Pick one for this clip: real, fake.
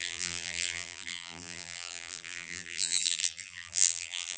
fake